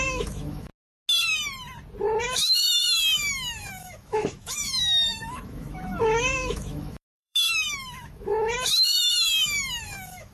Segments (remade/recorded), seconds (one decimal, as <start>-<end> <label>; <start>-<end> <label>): 0.0-0.7 remade; 0.7-2.2 recorded; 2.2-10.3 remade

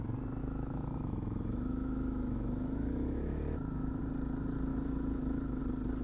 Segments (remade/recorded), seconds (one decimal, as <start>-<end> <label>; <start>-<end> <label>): 0.0-0.4 recorded; 0.4-4.0 remade; 4.0-4.7 recorded; 4.7-5.6 remade; 5.6-6.0 recorded